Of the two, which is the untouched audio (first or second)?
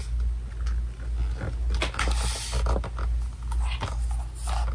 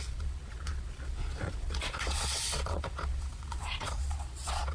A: first